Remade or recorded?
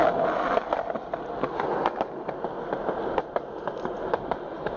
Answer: recorded